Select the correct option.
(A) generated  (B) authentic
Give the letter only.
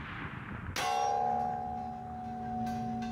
B